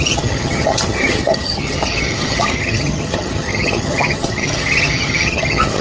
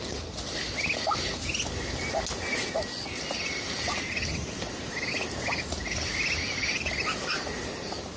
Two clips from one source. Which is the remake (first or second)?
first